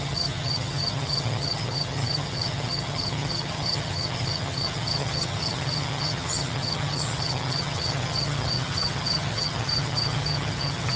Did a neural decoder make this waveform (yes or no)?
yes